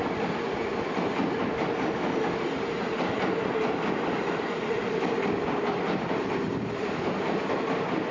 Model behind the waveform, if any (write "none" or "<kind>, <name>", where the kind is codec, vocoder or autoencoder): none